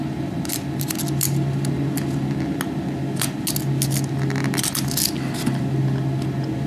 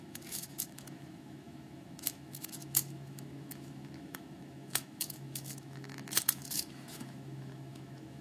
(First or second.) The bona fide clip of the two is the first